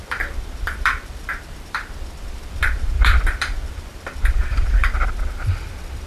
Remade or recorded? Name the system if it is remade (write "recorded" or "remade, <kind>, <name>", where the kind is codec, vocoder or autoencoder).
remade, vocoder, BigVGAN v2